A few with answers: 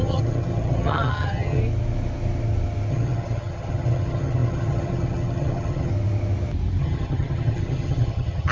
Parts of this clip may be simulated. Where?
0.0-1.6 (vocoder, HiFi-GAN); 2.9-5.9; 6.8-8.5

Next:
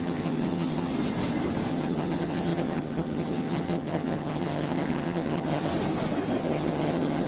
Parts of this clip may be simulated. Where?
0.0-0.9 (vocoder, HiFi-GAN); 1.7-5.7; 6.4-7.3

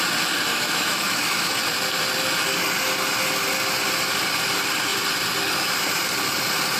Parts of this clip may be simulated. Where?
0.5-1.6 (autoencoder, DAC-VAE)

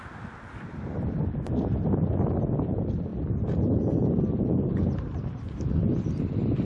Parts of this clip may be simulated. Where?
none

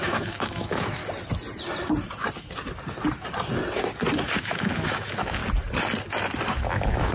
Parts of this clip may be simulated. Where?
0.0-1.0 (autoencoder, DAC-VAE); 4.4-5.4; 6.5-7.1

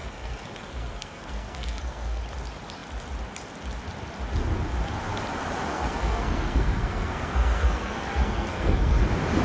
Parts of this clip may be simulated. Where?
0.0-2.2 (codec, SNAC); 5.7-9.0

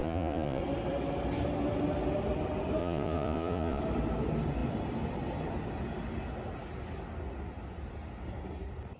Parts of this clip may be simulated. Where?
0.0-0.6 (vocoder, Vocos); 2.8-3.8

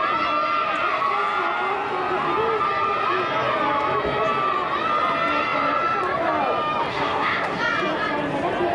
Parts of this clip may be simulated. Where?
6.9-7.6 (codec, SNAC)